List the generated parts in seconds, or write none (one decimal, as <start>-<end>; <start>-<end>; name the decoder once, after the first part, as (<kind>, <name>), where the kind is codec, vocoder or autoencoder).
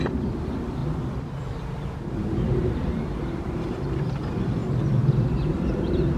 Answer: 0.0-0.8 (vocoder, BigVGAN v2); 2.9-4.6; 5.3-6.2